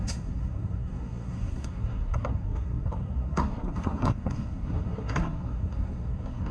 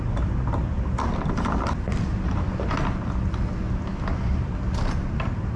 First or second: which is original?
second